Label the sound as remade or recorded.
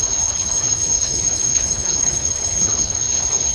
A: remade